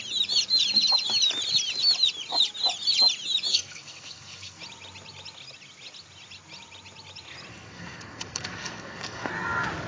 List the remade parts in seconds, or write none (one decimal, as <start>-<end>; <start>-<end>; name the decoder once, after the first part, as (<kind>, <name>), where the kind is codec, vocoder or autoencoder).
3.5-4.6 (codec, SNAC); 7.5-9.3